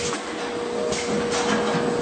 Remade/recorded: recorded